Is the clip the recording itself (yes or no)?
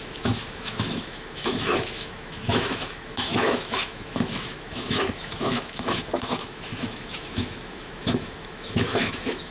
no